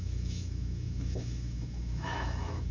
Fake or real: fake